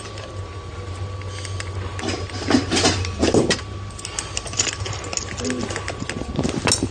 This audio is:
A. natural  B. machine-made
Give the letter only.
A